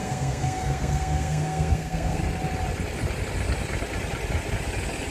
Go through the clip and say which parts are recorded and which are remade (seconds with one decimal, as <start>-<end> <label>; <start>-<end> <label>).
0.0-2.2 remade; 2.2-5.1 recorded